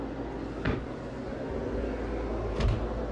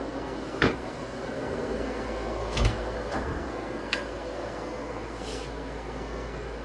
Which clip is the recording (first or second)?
first